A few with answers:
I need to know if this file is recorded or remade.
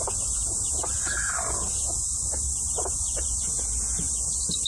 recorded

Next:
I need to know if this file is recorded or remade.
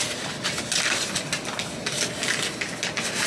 recorded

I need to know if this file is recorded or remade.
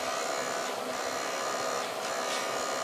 recorded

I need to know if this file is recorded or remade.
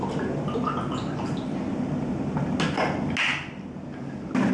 recorded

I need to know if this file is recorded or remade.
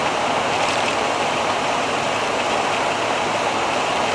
remade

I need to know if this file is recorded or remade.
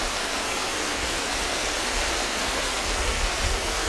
remade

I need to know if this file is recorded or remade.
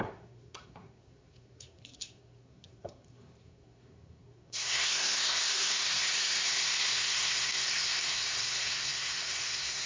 remade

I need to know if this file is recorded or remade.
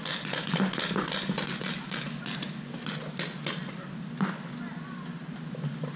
recorded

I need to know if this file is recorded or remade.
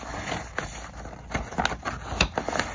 recorded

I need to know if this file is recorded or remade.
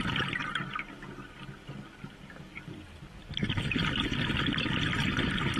recorded